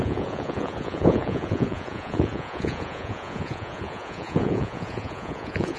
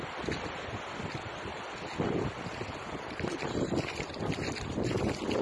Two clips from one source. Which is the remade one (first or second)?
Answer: first